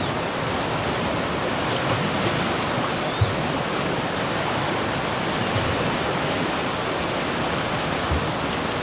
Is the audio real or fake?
real